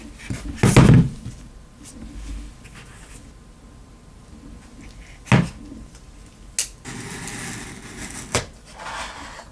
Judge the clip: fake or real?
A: real